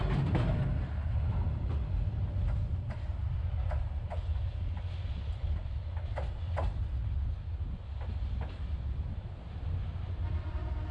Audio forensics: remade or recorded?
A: recorded